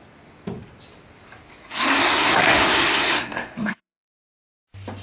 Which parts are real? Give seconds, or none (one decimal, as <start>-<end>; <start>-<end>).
0.0-1.6; 4.4-5.0

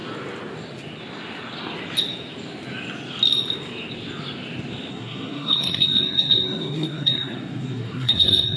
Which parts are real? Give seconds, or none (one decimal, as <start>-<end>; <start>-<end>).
0.0-4.9

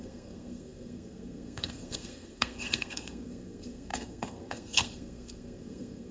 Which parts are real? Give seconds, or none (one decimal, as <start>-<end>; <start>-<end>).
none

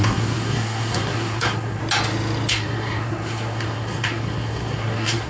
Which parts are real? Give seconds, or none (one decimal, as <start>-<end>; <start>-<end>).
1.8-2.5

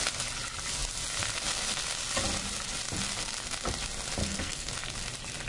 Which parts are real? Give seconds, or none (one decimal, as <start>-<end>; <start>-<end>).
0.0-4.2; 4.7-5.5

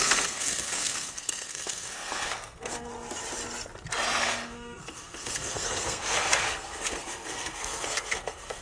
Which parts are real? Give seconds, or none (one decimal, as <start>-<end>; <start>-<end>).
2.9-4.2

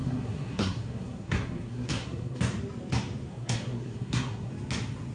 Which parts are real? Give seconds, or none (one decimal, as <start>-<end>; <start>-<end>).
2.4-3.3; 4.5-5.1

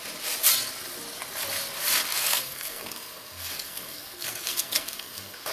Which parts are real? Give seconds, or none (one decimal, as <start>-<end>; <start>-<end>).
0.0-2.1